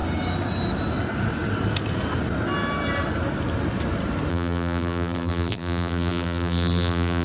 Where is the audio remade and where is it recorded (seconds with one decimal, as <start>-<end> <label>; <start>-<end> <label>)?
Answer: 0.0-4.3 recorded; 4.3-7.2 remade